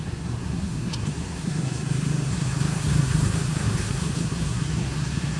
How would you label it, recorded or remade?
remade